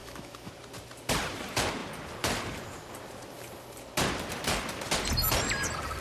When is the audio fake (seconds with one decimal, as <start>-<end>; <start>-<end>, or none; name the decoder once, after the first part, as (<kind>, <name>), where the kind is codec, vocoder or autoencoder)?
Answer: 0.0-0.5 (autoencoder, DAC-VAE)